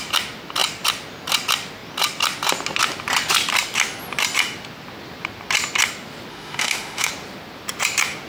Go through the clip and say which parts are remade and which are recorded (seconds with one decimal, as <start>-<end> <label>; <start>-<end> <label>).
0.0-6.3 recorded; 6.3-7.1 remade; 7.1-8.3 recorded